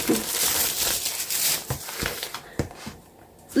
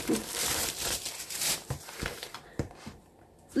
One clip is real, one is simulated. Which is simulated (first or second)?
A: second